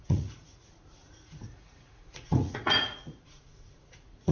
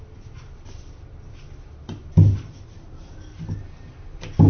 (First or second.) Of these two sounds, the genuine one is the second